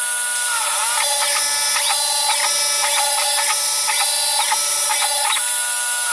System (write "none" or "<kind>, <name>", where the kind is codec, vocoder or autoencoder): none